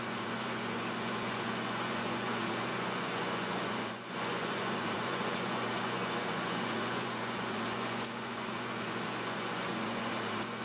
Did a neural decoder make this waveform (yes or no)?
yes